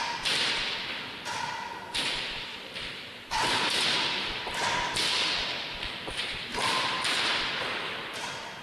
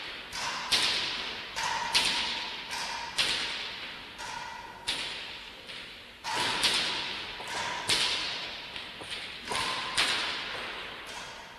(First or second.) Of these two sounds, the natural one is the second